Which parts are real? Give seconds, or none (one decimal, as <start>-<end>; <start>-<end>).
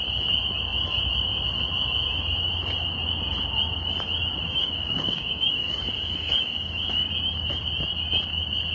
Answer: 0.0-4.4; 7.1-8.7